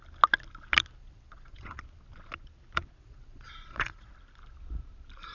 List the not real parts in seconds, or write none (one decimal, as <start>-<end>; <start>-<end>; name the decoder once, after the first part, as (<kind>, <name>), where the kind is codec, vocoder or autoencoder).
1.0-1.8 (vocoder, Vocos); 3.0-4.1